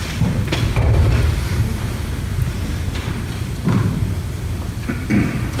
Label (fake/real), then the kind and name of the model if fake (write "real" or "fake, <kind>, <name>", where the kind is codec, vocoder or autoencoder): fake, vocoder, BigVGAN v2